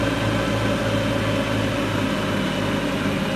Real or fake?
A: real